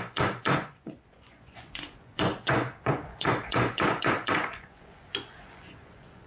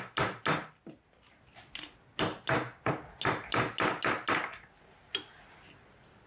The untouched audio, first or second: second